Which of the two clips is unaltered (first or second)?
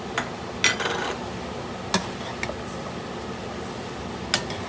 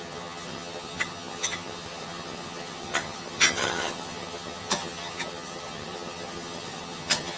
first